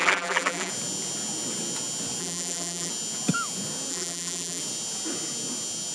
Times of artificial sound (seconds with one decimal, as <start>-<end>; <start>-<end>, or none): 0.0-0.7; 2.2-2.9; 3.9-4.6